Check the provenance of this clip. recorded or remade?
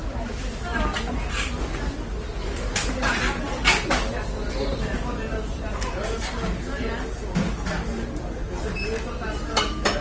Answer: recorded